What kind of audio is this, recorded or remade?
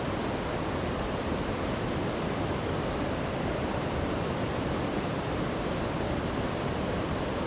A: remade